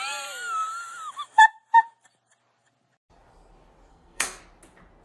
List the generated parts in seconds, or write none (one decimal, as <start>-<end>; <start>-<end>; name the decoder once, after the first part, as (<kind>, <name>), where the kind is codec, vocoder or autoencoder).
3.9-4.4 (codec, SNAC)